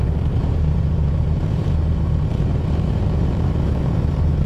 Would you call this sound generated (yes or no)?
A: yes